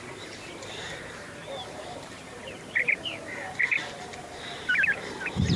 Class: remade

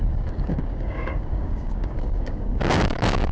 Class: remade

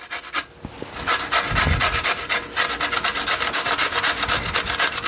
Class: recorded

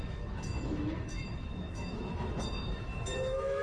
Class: remade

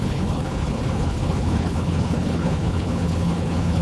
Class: remade